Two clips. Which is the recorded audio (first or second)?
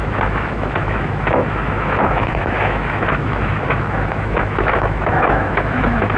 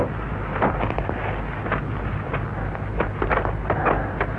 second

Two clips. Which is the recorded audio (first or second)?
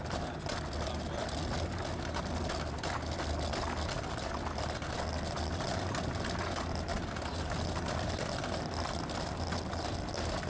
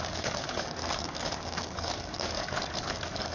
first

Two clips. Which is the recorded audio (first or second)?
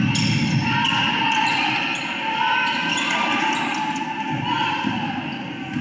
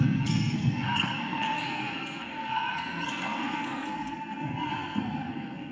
first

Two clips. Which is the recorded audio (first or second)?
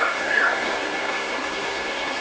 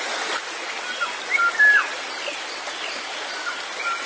second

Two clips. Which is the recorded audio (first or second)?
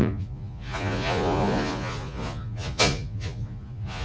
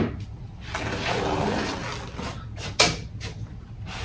second